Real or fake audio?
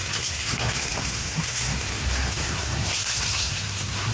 fake